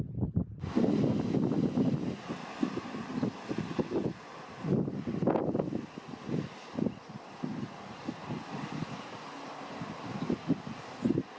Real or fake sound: real